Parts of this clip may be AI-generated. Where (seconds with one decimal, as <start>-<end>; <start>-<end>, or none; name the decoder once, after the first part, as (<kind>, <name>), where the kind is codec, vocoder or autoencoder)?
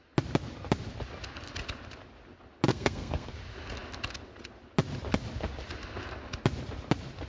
2.7-3.3 (codec, SNAC)